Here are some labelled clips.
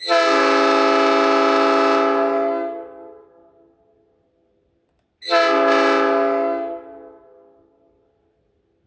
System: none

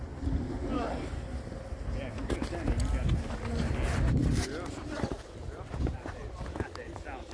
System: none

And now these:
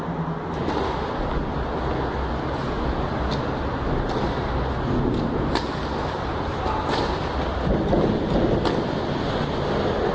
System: none